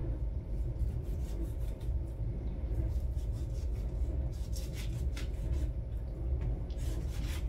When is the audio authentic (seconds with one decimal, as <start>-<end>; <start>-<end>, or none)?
3.7-4.3; 4.7-7.0